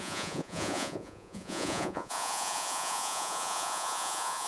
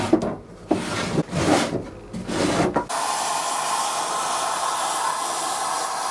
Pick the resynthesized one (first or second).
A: first